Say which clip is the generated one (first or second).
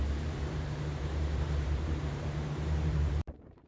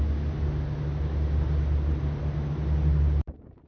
first